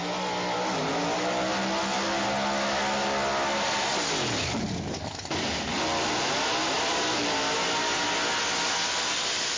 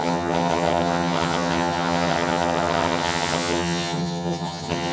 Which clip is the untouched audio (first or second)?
first